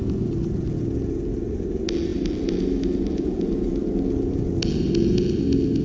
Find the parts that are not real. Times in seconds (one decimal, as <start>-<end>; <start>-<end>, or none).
none